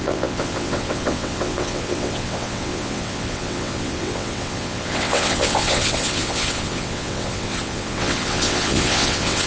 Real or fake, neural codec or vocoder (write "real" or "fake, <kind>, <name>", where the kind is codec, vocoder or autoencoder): fake, vocoder, WaveNeXt